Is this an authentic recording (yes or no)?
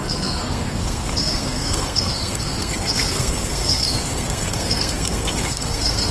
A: no